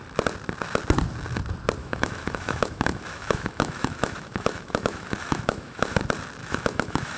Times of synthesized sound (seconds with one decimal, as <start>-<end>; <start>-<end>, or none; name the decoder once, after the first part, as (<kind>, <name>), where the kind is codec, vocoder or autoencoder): 1.8-6.0 (autoencoder, DAC-VAE); 6.4-7.2